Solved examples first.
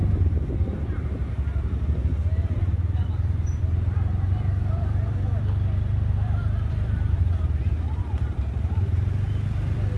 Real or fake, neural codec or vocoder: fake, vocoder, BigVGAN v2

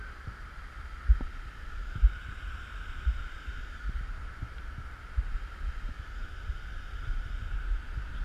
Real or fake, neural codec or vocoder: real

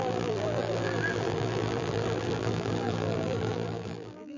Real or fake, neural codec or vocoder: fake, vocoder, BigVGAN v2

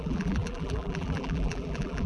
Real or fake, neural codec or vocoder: fake, vocoder, BigVGAN v2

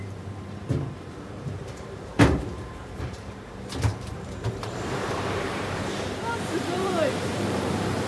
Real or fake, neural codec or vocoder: fake, vocoder, BigVGAN v2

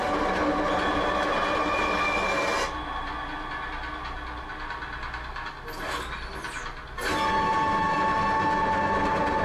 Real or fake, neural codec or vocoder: real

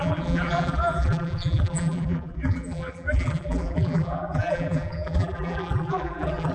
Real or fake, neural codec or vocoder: fake, vocoder, BigVGAN v2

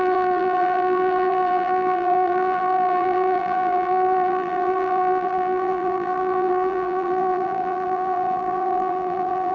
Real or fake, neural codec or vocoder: fake, vocoder, BigVGAN v2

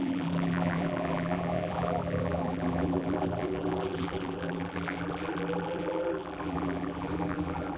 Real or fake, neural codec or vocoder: fake, vocoder, BigVGAN v2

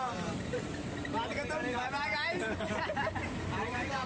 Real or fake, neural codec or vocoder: fake, vocoder, BigVGAN v2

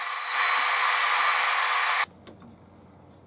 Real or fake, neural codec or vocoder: real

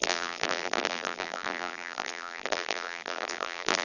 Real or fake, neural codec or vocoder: fake, vocoder, BigVGAN v2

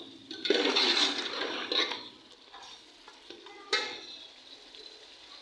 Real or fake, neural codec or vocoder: real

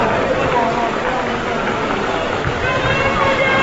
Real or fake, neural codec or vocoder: real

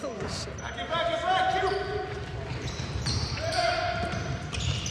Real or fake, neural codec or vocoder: fake, vocoder, BigVGAN v2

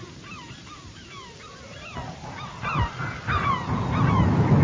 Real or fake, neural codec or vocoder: fake, vocoder, BigVGAN v2